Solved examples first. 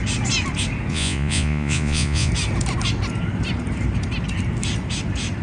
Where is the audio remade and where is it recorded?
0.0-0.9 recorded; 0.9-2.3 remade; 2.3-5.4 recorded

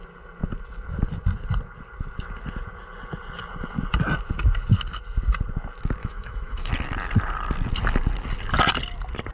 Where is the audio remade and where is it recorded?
0.0-6.0 recorded; 6.0-6.7 remade; 6.7-9.3 recorded

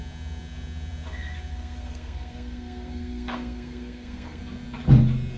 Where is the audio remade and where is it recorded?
0.0-1.5 recorded; 1.5-4.4 remade; 4.4-5.4 recorded

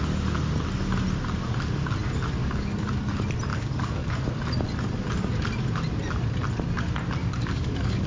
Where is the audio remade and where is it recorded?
0.0-2.4 recorded; 2.4-3.0 remade; 3.0-3.5 recorded; 3.5-4.1 remade; 4.1-7.2 recorded; 7.2-8.1 remade

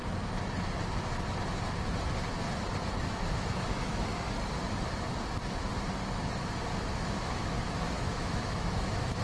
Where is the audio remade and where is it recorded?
0.0-3.0 recorded; 3.0-4.1 remade; 4.1-6.8 recorded; 6.8-9.2 remade

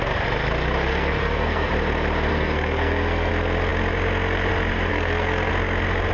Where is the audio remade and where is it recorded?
0.0-0.9 recorded; 0.9-1.7 remade; 1.7-2.3 recorded; 2.3-3.3 remade; 3.3-4.9 recorded; 4.9-5.5 remade; 5.5-6.1 recorded

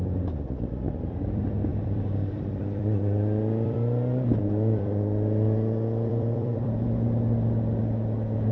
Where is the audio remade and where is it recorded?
0.0-1.7 recorded; 1.7-6.7 remade; 6.7-8.5 recorded

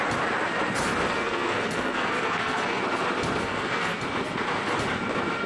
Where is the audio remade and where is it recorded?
0.0-1.2 recorded; 1.2-2.8 remade; 2.8-3.4 recorded; 3.4-4.0 remade; 4.0-5.5 recorded